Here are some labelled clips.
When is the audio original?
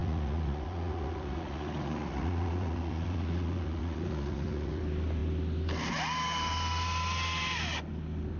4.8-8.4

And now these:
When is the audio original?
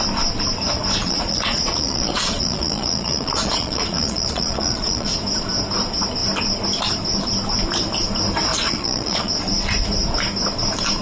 0.0-1.0; 5.1-8.5; 9.3-11.0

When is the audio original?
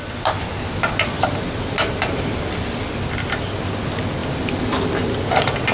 0.0-5.7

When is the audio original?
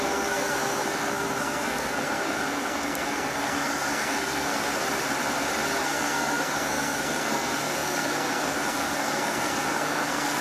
4.8-5.8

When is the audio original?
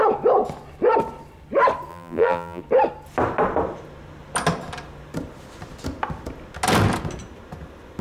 0.0-1.9; 2.6-8.0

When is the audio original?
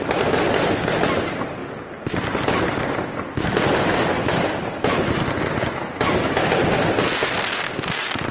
0.0-8.3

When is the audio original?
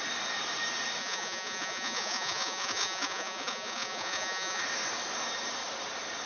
0.0-1.0; 4.6-6.3